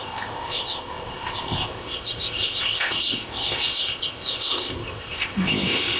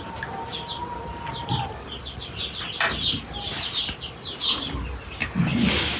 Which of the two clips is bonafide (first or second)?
second